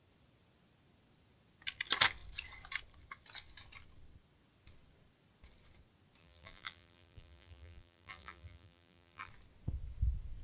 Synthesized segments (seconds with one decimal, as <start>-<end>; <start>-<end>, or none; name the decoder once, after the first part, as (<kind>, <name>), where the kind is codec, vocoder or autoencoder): 6.2-9.3 (vocoder, BigVGAN v2)